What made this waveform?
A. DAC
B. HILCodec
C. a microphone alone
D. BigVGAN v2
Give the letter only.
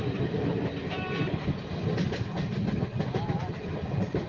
D